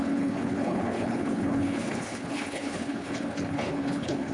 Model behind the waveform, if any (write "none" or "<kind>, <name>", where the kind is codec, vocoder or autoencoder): codec, HILCodec